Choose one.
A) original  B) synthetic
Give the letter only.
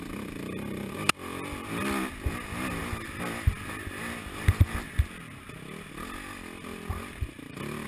A